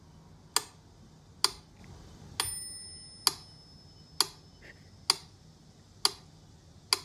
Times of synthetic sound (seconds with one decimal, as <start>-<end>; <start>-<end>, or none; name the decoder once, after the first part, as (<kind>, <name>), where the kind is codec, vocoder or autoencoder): none